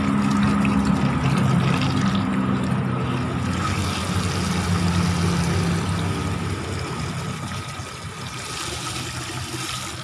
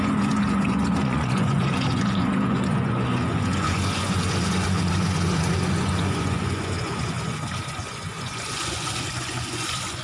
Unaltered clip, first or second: first